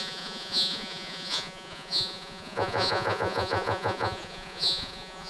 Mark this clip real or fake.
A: fake